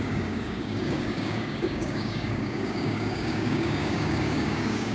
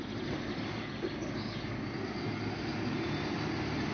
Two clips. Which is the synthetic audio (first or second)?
first